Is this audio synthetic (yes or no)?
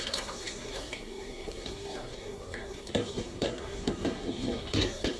yes